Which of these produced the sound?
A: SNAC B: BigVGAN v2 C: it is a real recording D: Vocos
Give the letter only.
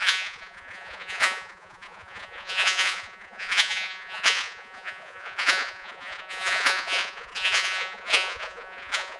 D